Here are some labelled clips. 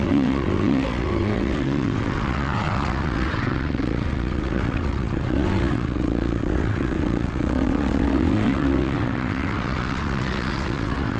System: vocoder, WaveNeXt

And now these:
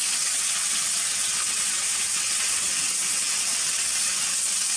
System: vocoder, WaveNeXt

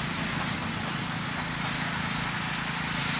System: none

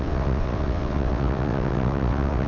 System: vocoder, WaveNeXt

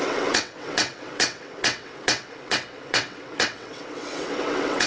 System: vocoder, WaveNeXt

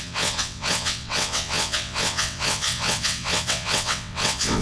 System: vocoder, WaveNeXt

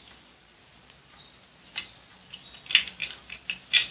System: none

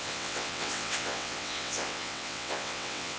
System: vocoder, WaveNeXt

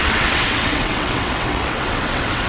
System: vocoder, WaveNeXt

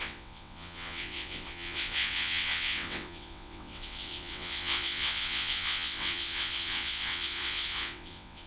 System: vocoder, WaveNeXt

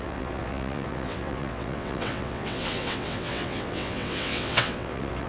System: vocoder, WaveNeXt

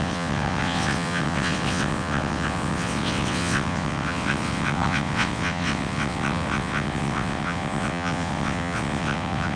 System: vocoder, WaveNeXt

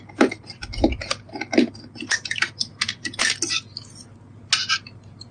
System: none